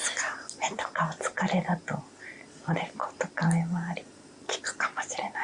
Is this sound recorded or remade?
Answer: recorded